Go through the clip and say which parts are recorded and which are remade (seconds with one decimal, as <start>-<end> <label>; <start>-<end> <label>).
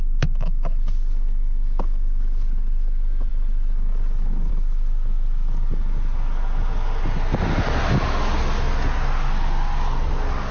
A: 0.0-10.5 recorded